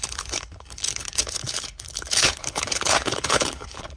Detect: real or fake fake